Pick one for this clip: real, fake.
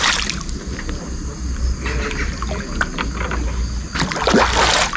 real